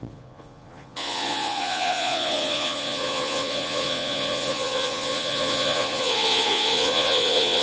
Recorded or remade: remade